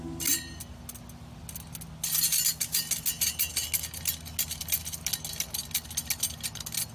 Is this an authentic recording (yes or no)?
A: yes